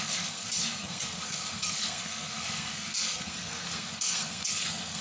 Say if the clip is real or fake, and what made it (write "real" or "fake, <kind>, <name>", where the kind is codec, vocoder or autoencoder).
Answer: fake, codec, SNAC